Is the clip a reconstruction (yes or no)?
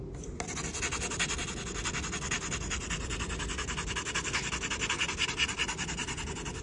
no